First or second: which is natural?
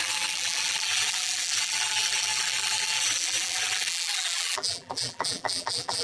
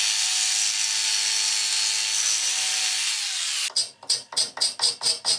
second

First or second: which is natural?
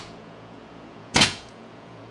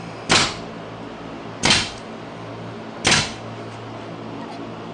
second